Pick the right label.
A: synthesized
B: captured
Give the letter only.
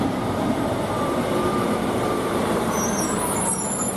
A